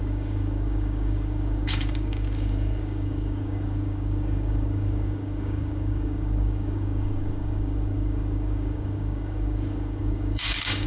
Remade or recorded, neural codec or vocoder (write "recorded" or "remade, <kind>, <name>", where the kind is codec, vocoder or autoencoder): remade, codec, DAC